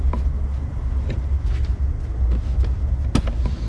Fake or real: real